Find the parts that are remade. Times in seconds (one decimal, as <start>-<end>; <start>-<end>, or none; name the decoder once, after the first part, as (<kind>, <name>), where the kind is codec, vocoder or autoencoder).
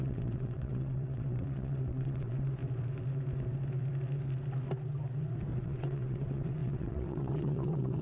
0.0-2.6 (vocoder, WaveNeXt); 5.6-8.0